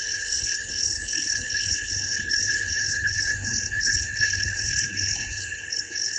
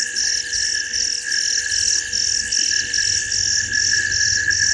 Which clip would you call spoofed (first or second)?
first